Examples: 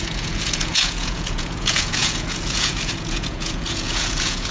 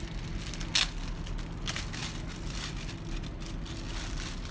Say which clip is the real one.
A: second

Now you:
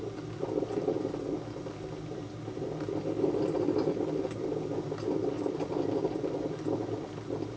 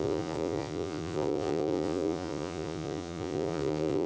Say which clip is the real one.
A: first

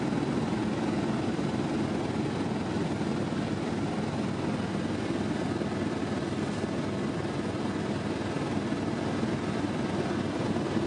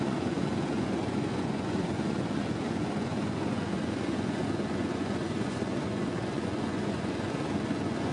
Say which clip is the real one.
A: first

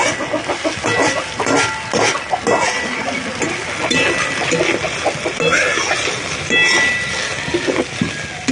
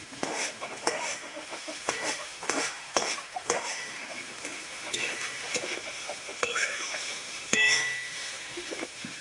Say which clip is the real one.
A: first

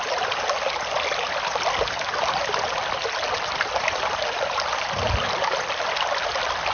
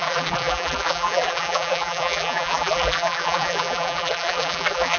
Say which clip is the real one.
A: first